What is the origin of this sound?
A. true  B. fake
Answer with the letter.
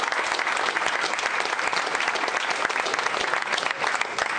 A